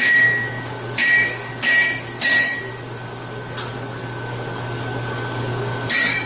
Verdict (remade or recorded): remade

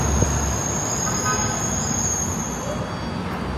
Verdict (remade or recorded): recorded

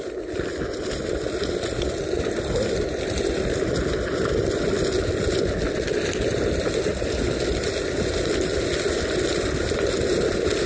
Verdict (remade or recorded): recorded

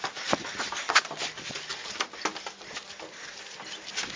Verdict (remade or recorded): recorded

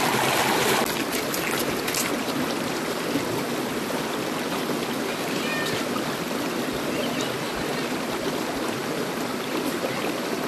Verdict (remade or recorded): recorded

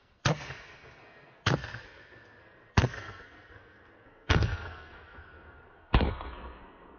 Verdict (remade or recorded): remade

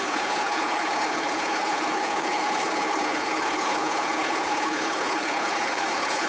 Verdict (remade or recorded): remade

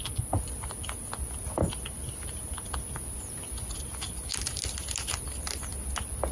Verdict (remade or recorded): recorded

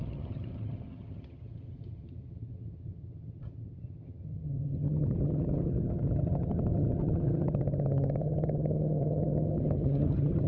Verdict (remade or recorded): remade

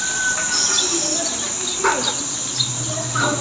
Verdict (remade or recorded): recorded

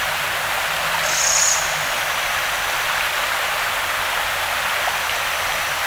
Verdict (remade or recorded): recorded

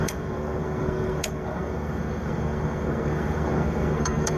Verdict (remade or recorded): remade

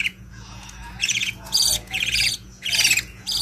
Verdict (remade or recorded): remade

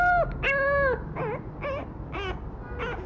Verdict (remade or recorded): recorded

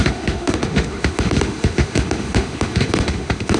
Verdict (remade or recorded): remade